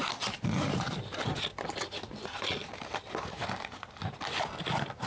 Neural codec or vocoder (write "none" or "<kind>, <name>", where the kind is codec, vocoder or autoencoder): none